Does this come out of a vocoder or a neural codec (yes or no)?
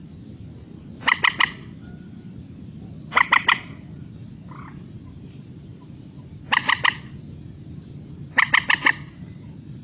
no